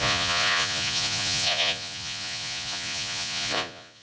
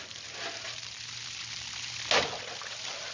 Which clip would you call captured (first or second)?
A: second